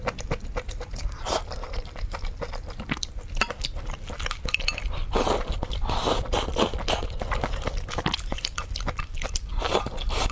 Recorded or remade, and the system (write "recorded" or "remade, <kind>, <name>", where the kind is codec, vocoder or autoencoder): recorded